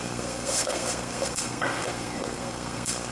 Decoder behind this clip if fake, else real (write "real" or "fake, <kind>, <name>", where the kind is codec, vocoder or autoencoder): fake, codec, SNAC